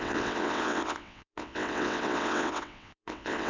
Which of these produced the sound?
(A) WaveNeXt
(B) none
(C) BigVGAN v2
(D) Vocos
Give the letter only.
A